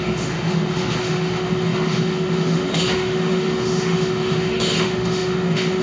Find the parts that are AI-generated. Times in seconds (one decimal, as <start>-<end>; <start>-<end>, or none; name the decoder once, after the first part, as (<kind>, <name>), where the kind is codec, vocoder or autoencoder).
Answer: 0.0-5.8 (autoencoder, DAC-VAE)